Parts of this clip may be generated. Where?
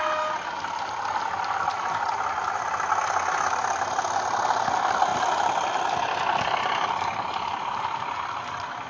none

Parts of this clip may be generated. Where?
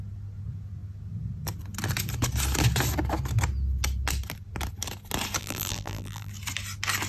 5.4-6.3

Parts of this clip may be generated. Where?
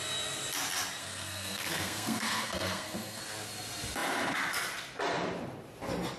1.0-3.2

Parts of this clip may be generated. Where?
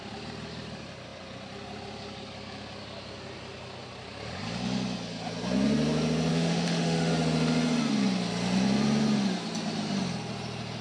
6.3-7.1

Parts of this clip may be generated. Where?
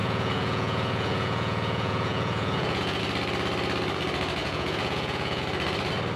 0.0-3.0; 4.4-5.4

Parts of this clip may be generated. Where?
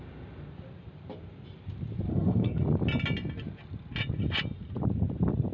2.1-2.6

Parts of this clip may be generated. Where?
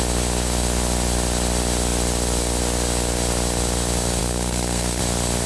4.2-5.0